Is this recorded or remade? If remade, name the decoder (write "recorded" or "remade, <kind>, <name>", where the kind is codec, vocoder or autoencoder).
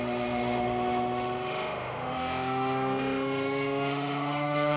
remade, autoencoder, DAC-VAE